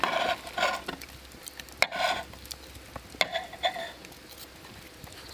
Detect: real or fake real